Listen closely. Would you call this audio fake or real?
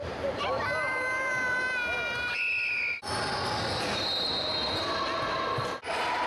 real